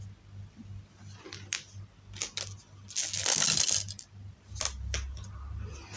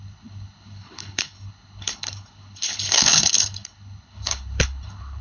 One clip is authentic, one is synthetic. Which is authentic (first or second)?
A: first